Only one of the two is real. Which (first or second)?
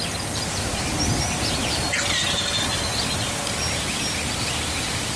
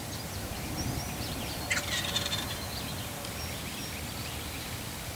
first